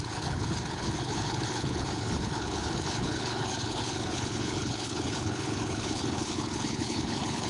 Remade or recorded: remade